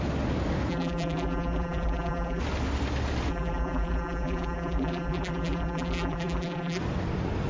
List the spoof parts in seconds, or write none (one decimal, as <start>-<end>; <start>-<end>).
0.7-2.4; 3.3-6.8

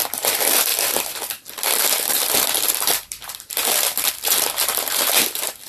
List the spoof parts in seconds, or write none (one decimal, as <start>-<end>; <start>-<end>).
0.0-5.7

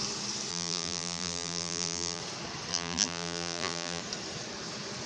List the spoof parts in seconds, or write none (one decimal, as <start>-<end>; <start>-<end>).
0.5-2.2; 2.7-4.0

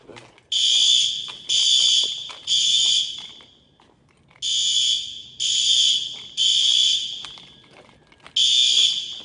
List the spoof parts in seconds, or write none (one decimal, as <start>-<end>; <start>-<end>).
none

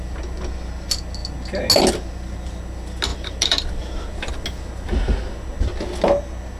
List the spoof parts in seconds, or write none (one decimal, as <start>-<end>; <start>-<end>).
3.1-4.3